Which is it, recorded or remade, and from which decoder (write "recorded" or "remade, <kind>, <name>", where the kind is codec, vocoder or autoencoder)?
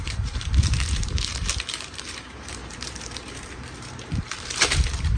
remade, vocoder, BigVGAN v2